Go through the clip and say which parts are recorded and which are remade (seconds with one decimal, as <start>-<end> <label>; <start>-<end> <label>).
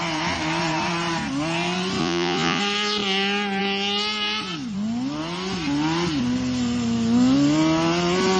0.0-2.0 recorded; 2.0-2.6 remade; 2.6-8.4 recorded